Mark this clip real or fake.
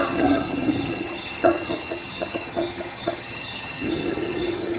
fake